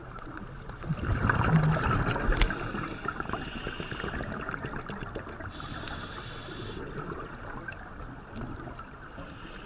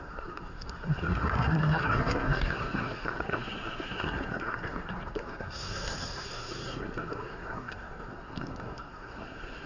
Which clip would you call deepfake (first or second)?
second